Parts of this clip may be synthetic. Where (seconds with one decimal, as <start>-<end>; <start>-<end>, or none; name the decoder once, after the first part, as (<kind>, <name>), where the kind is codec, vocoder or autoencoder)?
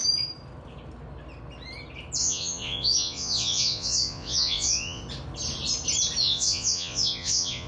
2.2-5.0 (vocoder, Vocos); 6.2-7.7